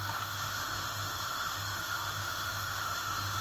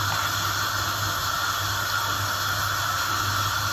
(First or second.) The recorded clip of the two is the second